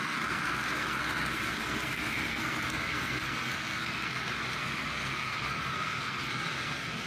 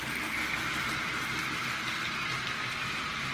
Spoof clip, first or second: first